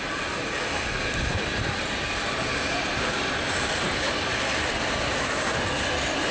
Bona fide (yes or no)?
yes